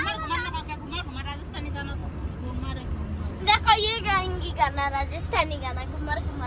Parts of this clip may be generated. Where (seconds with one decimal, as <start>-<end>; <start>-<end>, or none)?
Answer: none